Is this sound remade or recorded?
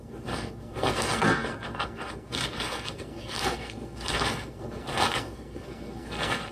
remade